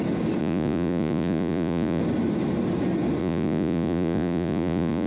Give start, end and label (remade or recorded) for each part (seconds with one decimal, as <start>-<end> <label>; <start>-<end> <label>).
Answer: 0.0-0.4 recorded; 0.4-2.0 remade; 2.0-3.2 recorded; 3.2-5.1 remade